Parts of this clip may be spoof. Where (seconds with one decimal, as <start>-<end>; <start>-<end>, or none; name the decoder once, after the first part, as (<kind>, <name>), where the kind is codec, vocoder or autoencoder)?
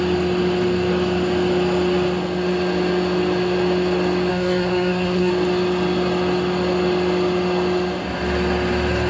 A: 4.3-5.3 (codec, SNAC)